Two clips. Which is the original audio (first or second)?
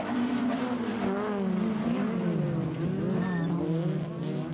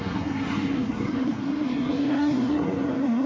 first